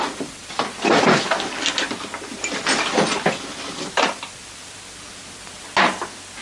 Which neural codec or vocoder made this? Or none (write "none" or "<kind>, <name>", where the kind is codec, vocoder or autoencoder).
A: none